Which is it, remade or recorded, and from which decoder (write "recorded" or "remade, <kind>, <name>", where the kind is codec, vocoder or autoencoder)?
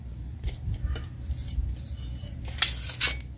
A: recorded